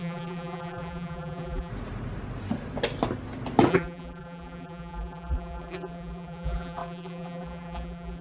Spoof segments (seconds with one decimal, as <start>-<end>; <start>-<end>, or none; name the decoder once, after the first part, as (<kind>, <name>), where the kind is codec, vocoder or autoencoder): 0.0-1.7 (vocoder, BigVGAN v2); 3.7-8.2

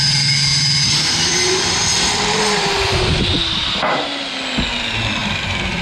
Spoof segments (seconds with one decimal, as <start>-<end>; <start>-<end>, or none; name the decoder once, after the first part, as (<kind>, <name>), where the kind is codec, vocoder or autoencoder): 0.5-3.2 (vocoder, BigVGAN v2); 5.2-5.8

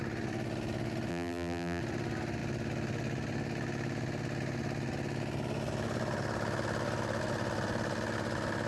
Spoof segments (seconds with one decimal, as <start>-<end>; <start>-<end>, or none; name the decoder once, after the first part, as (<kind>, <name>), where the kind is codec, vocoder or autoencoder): 1.1-1.8 (vocoder, BigVGAN v2)

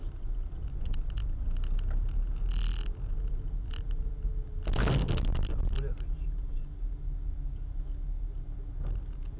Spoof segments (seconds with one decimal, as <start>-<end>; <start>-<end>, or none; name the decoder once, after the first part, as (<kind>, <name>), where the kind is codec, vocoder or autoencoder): none